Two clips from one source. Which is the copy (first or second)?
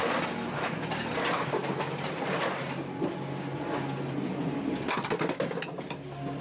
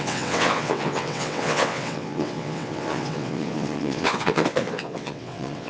second